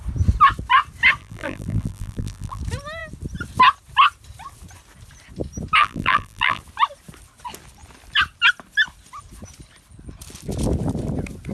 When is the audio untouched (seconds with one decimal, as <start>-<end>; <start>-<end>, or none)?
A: 0.0-1.2; 2.6-5.8; 6.6-11.5